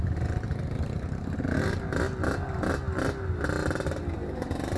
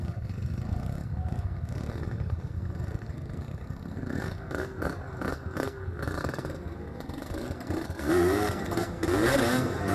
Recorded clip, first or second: first